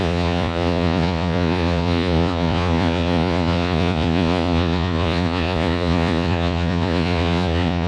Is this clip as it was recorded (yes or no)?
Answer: no